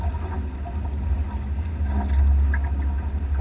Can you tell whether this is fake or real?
real